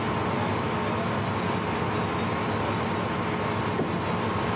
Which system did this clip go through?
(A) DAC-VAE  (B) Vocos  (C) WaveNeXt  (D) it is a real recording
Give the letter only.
D